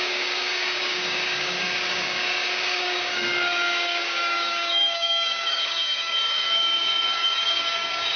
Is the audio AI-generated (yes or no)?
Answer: yes